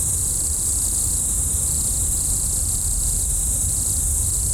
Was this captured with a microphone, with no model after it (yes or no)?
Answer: no